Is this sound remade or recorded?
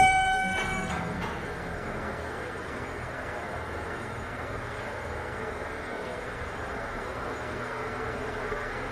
remade